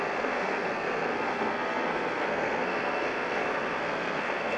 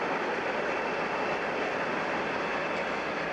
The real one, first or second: second